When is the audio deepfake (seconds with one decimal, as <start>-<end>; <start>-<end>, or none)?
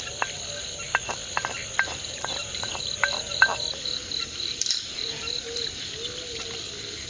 1.6-5.9